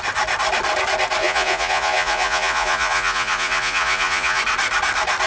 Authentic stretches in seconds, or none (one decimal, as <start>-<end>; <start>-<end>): 0.0-1.2; 4.4-5.3